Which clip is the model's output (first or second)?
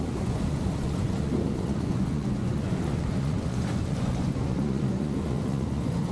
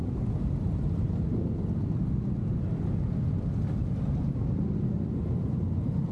first